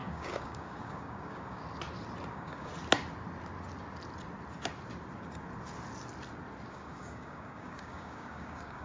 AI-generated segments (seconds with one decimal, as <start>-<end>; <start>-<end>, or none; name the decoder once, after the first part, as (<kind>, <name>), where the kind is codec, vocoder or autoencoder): 0.0-1.6 (codec, DAC); 2.3-2.7; 6.7-8.8